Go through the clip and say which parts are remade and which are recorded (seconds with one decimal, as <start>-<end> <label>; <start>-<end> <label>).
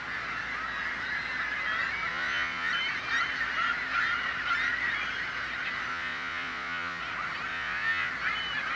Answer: 0.0-2.1 recorded; 2.1-2.7 remade; 2.7-5.9 recorded; 5.9-7.0 remade; 7.0-7.5 recorded; 7.5-8.1 remade; 8.1-8.8 recorded